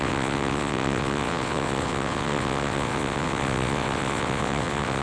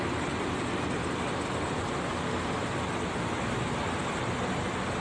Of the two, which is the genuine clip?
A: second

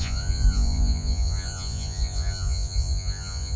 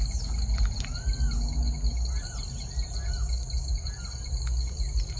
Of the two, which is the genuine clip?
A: second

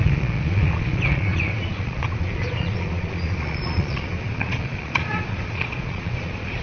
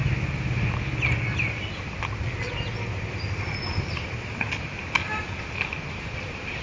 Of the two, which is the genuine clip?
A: second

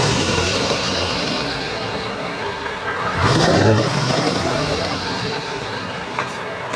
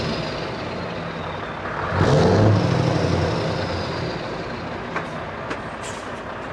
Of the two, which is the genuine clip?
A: second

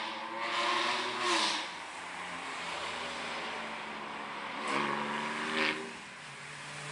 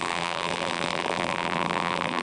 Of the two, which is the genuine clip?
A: first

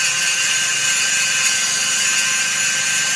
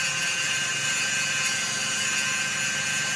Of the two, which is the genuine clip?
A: second